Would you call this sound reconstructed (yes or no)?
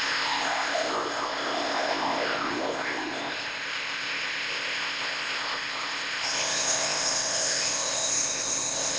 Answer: yes